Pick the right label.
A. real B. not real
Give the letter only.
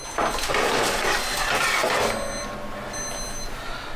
A